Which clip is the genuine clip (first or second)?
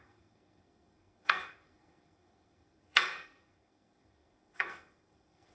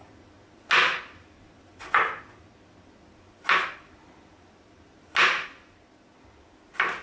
second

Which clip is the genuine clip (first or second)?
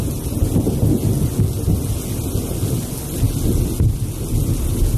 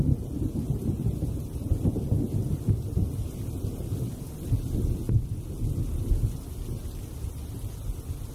first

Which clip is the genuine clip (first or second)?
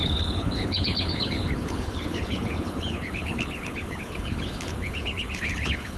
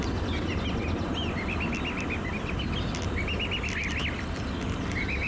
second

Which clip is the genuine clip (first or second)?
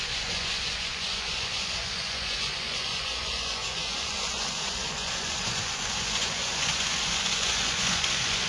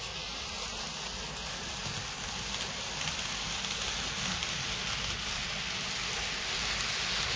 second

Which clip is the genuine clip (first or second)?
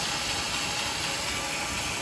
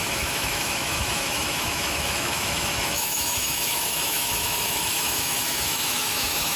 first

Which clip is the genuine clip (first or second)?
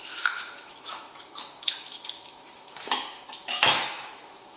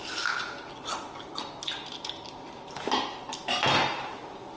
second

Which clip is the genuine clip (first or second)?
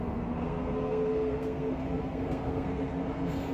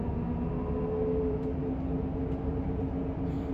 second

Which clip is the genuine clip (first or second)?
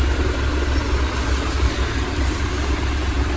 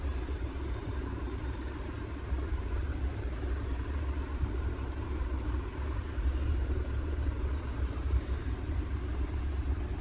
first